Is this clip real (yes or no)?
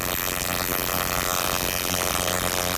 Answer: yes